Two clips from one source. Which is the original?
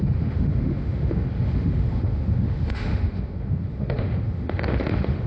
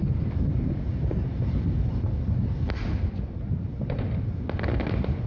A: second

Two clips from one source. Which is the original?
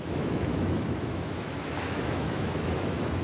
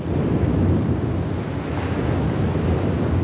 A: second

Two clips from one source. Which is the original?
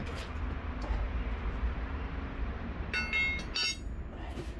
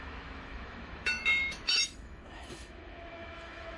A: first